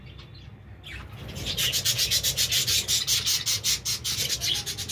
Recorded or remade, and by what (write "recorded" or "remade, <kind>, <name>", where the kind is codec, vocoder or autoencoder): recorded